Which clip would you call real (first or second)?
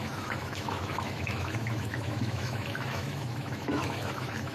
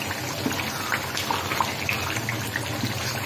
second